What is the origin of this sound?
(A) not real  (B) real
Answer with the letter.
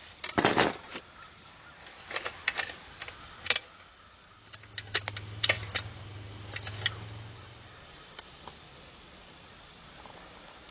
B